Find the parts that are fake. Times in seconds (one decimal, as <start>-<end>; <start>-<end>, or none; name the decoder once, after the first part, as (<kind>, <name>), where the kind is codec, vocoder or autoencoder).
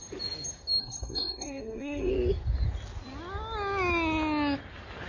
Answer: 0.8-2.1 (codec, SNAC)